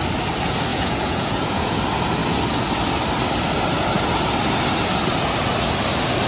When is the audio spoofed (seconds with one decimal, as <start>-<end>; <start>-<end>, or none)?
0.7-1.8